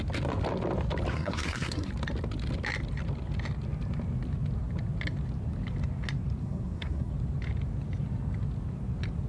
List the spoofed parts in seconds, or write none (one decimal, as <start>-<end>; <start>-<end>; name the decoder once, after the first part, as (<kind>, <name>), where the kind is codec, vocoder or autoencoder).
1.1-1.9 (codec, SNAC); 6.4-7.1